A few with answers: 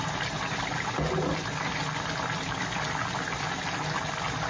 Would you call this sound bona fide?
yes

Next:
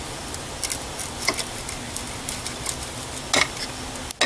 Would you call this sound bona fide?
yes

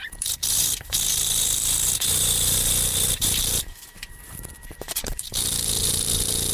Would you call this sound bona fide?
no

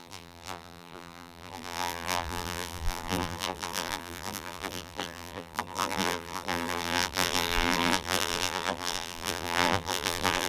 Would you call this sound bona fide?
no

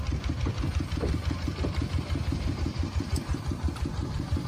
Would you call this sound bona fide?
no